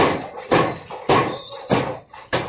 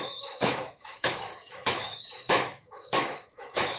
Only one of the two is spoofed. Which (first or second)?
second